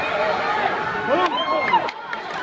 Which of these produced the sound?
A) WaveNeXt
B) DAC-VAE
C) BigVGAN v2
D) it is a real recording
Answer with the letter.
D